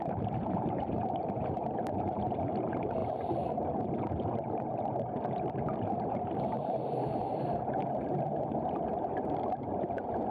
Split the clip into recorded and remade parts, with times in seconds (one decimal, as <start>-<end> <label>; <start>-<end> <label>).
0.0-10.3 remade